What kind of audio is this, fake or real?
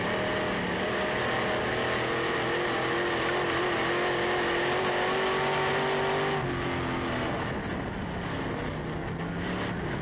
real